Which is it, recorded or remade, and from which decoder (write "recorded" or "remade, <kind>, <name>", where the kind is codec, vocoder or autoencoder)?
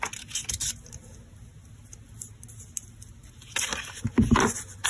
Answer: recorded